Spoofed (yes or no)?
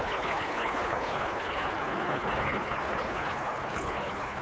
yes